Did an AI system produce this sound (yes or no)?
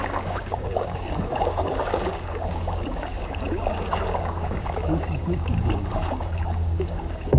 yes